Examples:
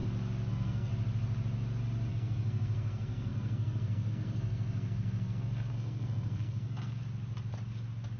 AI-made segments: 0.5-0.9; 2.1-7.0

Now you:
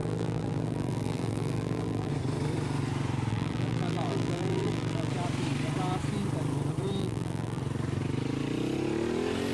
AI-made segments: 0.0-2.1; 3.3-5.1; 7.0-7.6

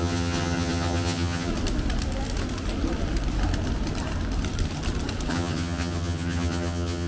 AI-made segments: 0.0-1.5; 5.3-7.1

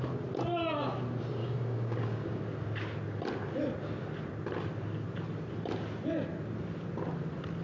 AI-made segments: 1.4-2.4

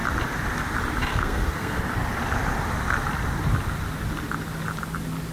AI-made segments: 1.1-1.8

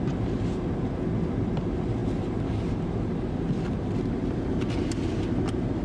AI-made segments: none

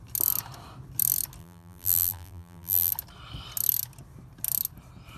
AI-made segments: 1.4-2.9